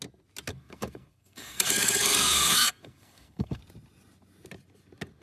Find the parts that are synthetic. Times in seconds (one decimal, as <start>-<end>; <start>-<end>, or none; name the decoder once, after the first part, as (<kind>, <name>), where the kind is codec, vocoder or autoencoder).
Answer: 0.5-3.6 (codec, SNAC)